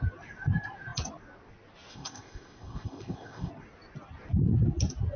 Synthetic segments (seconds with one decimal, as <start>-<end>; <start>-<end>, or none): 1.9-3.5